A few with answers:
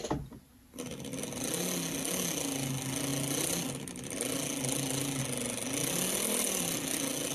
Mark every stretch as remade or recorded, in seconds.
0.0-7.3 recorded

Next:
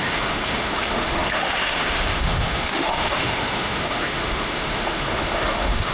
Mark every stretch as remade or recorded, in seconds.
0.0-5.9 remade

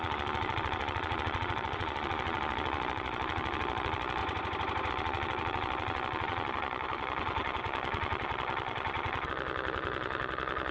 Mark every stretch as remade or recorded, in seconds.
0.0-4.2 remade; 4.2-4.9 recorded; 4.9-10.7 remade

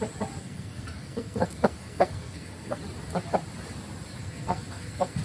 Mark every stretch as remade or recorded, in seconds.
0.0-0.4 recorded; 0.4-2.8 remade; 2.8-4.2 recorded; 4.2-5.2 remade

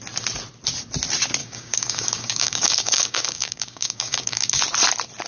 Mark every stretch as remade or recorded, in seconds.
0.0-1.4 recorded; 1.4-4.6 remade; 4.6-5.3 recorded